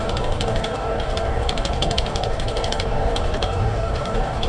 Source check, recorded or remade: remade